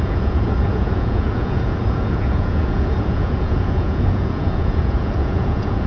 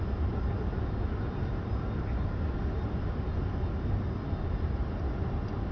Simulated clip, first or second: first